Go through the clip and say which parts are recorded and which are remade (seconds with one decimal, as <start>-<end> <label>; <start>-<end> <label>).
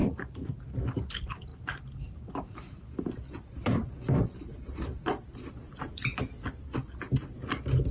0.0-0.5 remade; 0.5-1.5 recorded; 1.5-6.2 remade; 6.2-7.9 recorded